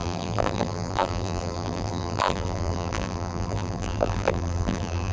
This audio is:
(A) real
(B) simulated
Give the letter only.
B